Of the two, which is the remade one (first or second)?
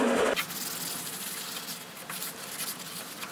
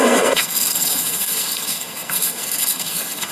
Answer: second